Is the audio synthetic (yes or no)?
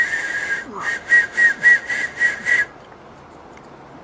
no